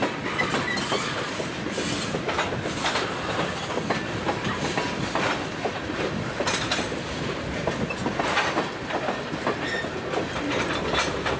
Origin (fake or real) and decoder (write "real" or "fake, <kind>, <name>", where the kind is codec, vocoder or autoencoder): real